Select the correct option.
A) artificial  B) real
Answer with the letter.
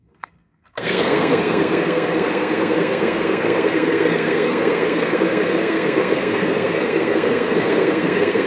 A